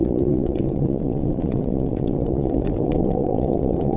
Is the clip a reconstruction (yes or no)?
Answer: yes